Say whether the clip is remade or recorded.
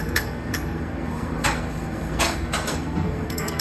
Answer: remade